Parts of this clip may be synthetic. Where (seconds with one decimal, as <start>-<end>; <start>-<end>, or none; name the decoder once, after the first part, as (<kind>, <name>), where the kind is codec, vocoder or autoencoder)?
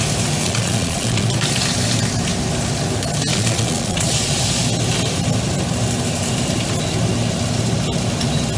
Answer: 0.4-1.3 (vocoder, Vocos); 3.3-4.1